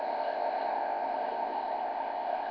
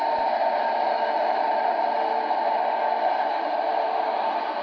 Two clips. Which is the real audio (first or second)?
second